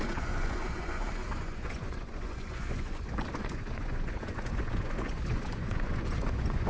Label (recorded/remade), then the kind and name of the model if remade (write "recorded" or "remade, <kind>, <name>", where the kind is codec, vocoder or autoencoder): remade, vocoder, Vocos